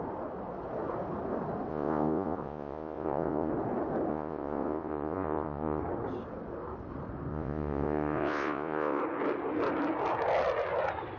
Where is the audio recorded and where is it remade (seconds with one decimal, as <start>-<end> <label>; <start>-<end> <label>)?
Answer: 0.0-1.7 recorded; 1.7-3.5 remade; 3.5-4.1 recorded; 4.1-5.8 remade; 5.8-7.3 recorded; 7.3-9.0 remade; 9.0-11.2 recorded